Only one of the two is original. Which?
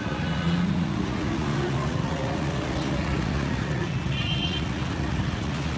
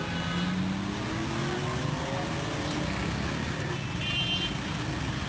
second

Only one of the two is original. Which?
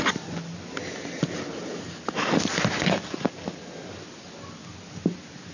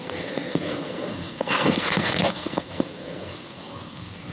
first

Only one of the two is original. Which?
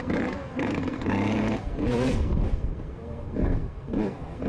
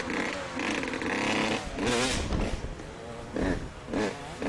second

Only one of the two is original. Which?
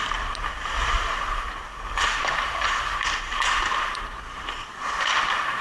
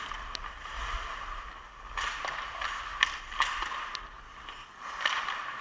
second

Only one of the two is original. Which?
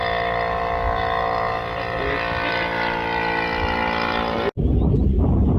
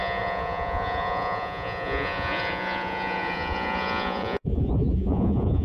first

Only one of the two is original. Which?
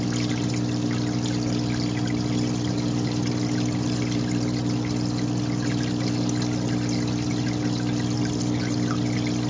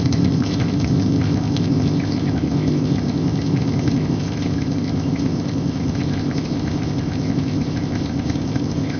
first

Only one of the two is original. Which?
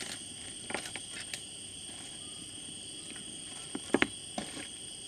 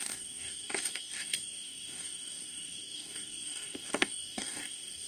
first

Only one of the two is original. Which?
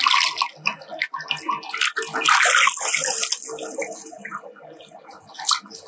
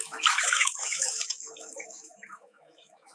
first